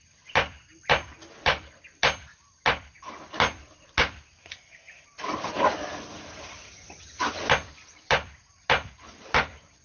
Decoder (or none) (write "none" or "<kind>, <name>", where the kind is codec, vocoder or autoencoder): none